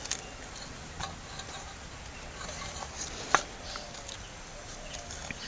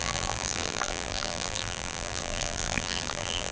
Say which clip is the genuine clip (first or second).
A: first